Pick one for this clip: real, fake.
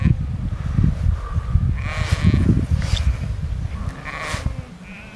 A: real